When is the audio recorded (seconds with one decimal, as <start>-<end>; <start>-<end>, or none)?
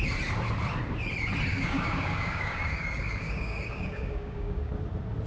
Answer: 0.0-1.5; 4.7-5.3